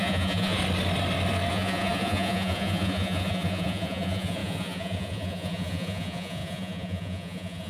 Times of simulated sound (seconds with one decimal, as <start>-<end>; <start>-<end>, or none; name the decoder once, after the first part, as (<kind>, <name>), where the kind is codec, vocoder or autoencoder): 0.0-0.6 (vocoder, Vocos); 1.5-7.7